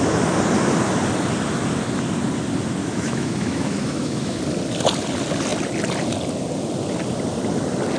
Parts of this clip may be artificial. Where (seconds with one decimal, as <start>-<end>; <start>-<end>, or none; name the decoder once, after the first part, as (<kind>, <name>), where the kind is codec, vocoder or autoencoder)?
2.8-4.4 (autoencoder, DAC-VAE)